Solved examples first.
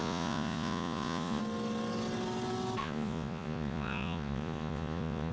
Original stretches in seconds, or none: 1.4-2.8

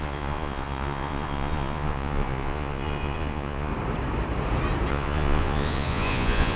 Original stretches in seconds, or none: 3.7-4.9

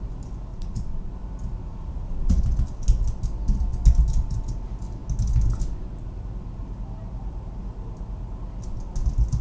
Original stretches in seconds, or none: 0.0-0.5; 1.1-1.6; 2.4-9.4

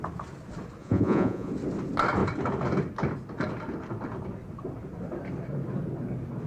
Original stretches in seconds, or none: 0.0-0.8; 1.5-6.5

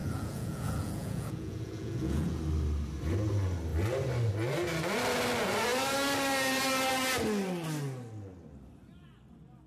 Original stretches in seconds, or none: 2.4-9.7